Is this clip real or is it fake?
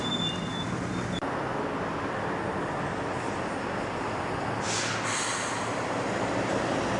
real